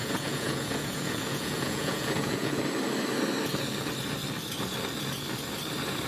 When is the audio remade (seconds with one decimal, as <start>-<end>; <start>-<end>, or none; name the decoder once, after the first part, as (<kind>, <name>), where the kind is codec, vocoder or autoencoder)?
0.0-2.6 (vocoder, Vocos)